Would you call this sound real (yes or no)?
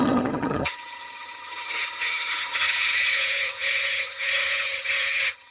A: no